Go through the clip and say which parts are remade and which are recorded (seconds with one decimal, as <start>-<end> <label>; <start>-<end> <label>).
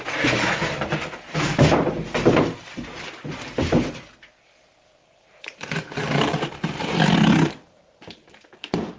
0.0-5.0 recorded; 5.0-7.9 remade; 7.9-9.0 recorded